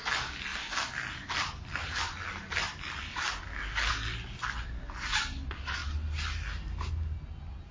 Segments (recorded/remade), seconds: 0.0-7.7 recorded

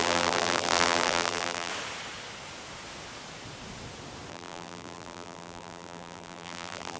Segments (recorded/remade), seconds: 0.0-1.7 remade; 1.7-4.3 recorded; 4.3-7.0 remade

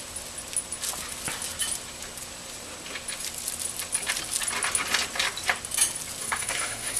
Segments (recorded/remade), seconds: 0.0-6.2 recorded; 6.2-7.0 remade

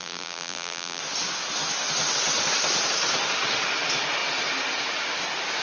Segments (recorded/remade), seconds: 0.0-1.0 remade; 1.0-5.6 recorded